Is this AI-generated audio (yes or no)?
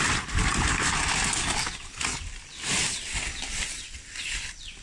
no